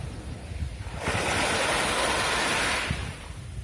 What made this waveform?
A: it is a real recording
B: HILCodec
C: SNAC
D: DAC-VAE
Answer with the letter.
A